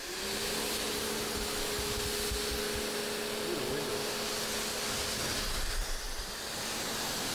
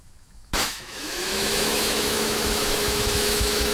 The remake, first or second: second